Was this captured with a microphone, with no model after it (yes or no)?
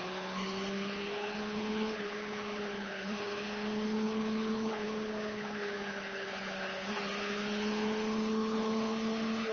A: no